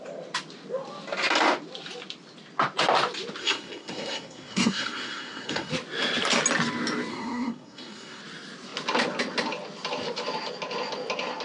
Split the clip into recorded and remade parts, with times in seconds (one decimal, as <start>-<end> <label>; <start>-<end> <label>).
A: 0.0-3.4 recorded; 3.4-5.7 remade; 5.7-7.1 recorded; 7.1-8.2 remade; 8.2-11.4 recorded